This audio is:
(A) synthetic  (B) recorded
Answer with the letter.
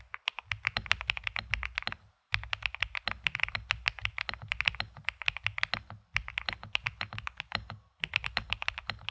B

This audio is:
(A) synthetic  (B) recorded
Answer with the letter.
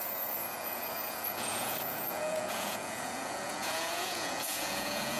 A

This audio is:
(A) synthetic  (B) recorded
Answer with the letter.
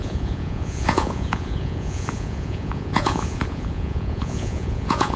A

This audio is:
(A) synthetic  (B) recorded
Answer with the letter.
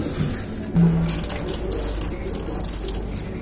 B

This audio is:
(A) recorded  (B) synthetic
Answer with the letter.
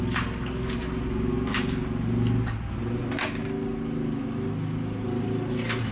A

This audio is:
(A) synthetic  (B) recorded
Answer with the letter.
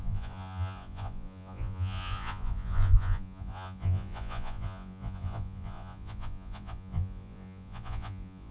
A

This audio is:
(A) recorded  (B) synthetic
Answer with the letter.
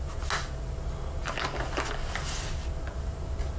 A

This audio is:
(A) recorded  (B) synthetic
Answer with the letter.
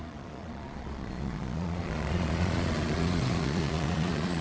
B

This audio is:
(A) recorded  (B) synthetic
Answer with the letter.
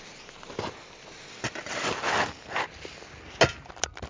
A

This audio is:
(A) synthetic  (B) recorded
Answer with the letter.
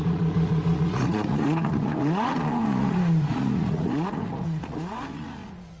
A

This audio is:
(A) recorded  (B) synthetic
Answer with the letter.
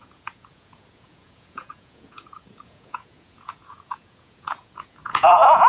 B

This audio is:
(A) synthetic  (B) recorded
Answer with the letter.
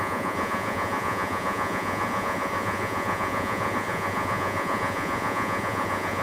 A